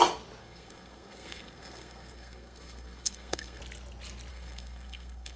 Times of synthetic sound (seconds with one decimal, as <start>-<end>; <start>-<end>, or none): 0.4-3.6; 4.3-5.4